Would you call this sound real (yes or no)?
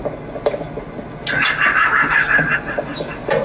yes